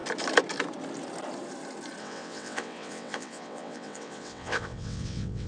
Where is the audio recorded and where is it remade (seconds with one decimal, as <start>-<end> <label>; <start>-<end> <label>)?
0.0-2.0 recorded; 2.0-5.5 remade